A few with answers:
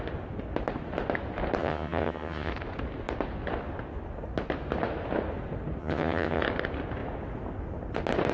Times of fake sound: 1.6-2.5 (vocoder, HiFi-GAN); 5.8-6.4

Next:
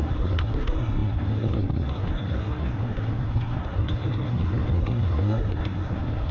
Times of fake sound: 0.0-6.3 (codec, SNAC)

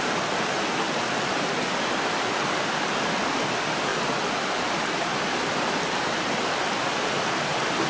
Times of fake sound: none

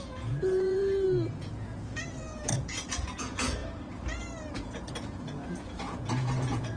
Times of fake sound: 0.0-0.8 (vocoder, Vocos); 1.3-3.6; 4.5-6.8

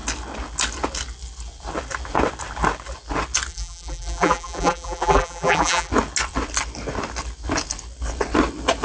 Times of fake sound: 3.5-5.9 (vocoder, BigVGAN v2)